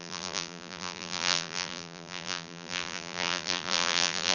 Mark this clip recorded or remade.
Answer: remade